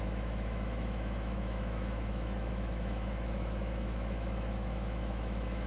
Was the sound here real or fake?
fake